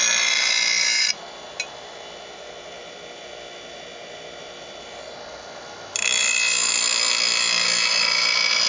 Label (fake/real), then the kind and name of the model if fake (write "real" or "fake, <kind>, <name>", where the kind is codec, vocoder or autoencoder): real